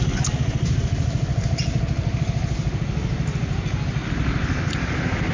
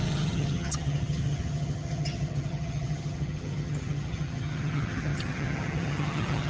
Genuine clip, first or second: first